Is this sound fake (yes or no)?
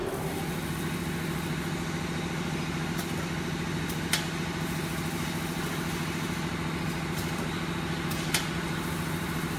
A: no